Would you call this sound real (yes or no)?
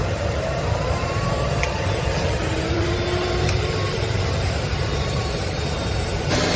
no